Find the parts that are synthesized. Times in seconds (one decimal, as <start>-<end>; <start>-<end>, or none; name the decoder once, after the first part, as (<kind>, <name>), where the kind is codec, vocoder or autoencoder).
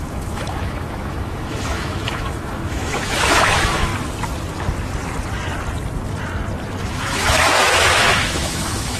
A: 0.0-3.9 (autoencoder, DAC-VAE); 6.8-9.0